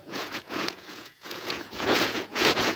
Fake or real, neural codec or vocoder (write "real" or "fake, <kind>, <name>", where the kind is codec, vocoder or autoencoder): fake, vocoder, Vocos